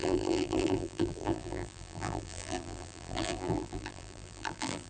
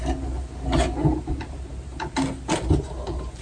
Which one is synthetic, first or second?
first